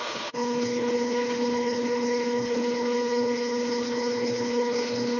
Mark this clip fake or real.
fake